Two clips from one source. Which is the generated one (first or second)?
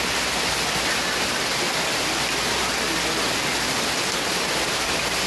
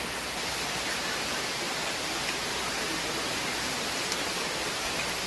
second